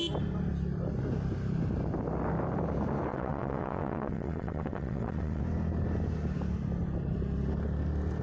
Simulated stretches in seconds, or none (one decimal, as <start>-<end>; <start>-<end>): 3.1-5.4